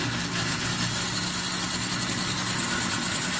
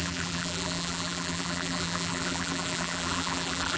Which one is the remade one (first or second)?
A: second